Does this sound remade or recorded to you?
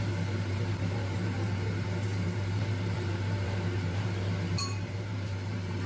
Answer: remade